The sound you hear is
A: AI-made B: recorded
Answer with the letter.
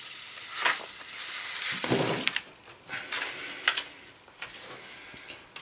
B